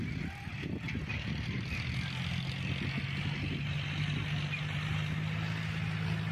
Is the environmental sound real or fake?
real